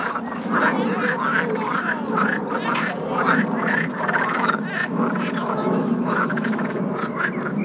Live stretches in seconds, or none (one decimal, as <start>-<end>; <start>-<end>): 0.0-5.4; 6.8-7.6